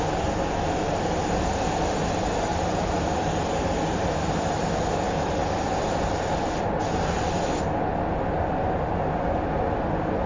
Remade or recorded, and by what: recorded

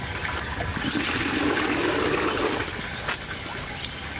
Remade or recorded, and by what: recorded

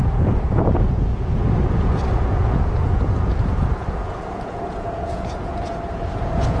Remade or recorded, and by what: remade, vocoder, Vocos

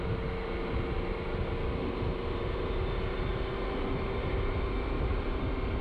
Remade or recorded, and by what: recorded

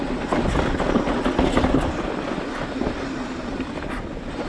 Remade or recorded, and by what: recorded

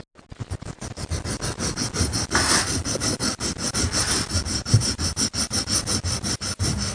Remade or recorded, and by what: recorded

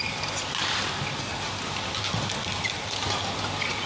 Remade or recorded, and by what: recorded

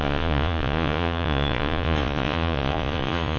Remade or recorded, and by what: remade, vocoder, Vocos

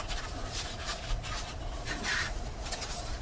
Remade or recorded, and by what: recorded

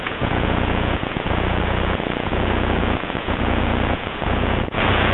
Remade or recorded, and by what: remade, vocoder, Vocos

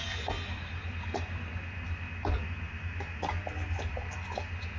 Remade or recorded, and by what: recorded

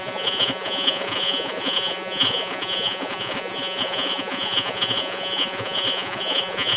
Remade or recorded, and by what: remade, vocoder, Vocos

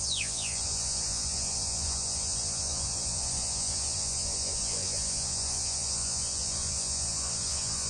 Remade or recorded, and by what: remade, vocoder, Vocos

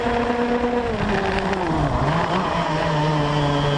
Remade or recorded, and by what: recorded